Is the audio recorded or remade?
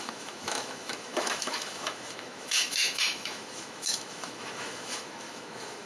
remade